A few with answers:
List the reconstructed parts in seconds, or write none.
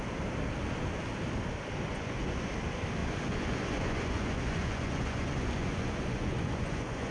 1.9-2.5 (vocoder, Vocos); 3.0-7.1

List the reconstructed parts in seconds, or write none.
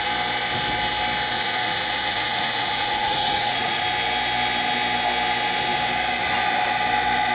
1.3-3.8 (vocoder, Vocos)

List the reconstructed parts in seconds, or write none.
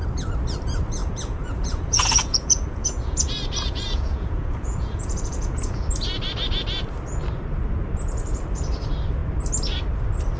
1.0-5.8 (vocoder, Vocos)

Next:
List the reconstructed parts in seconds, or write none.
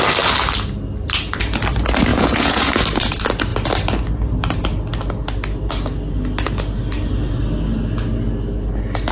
2.1-2.7 (vocoder, Vocos)